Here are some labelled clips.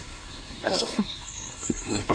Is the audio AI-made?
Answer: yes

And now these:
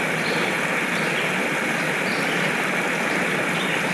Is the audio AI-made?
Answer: no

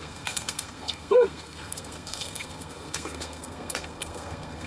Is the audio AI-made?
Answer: yes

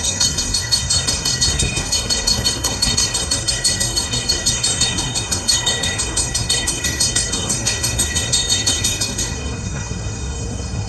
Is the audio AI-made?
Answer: yes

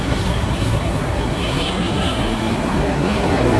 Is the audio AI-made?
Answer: yes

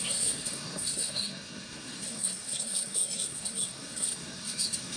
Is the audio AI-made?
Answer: yes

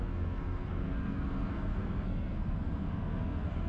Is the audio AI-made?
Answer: yes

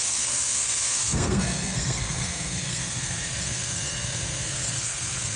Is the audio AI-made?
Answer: yes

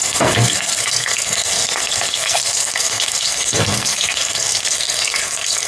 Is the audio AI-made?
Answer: yes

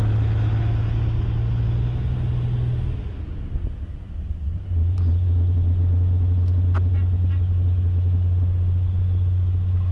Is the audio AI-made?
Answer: no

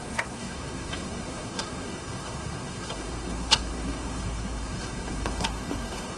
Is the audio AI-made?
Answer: yes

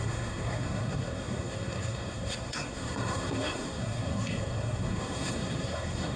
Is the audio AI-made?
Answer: yes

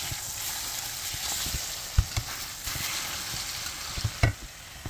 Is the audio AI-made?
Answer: no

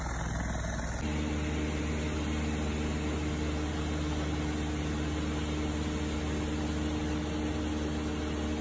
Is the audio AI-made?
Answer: no